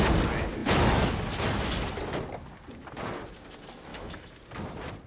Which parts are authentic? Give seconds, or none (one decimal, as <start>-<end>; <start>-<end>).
0.0-3.9; 4.4-5.1

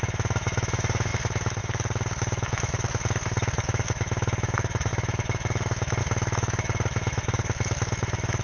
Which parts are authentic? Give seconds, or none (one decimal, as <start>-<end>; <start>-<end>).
none

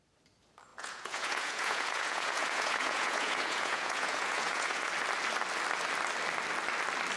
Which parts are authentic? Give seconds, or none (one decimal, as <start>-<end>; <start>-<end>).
0.0-0.7; 4.9-7.2